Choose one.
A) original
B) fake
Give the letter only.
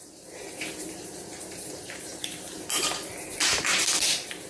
B